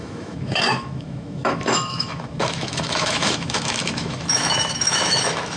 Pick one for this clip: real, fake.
fake